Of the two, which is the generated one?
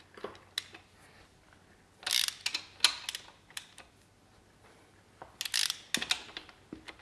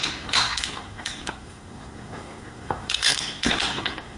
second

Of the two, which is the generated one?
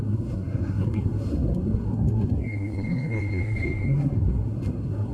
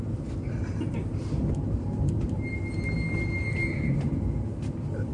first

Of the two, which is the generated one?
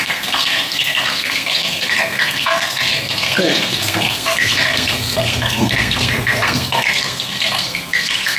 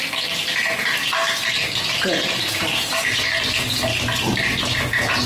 first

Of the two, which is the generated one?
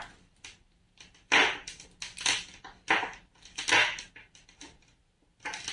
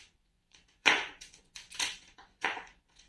second